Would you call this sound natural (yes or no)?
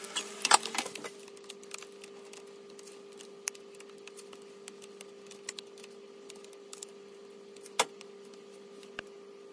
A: yes